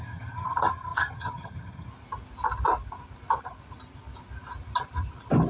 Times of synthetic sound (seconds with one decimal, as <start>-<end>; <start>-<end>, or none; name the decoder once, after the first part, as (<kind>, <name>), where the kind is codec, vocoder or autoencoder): 0.0-1.9 (vocoder, HiFi-GAN)